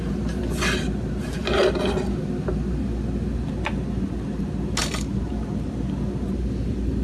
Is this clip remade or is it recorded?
recorded